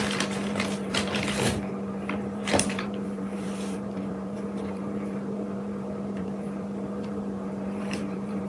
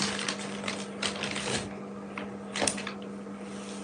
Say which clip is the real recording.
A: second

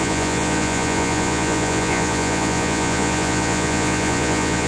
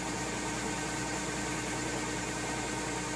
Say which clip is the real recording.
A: second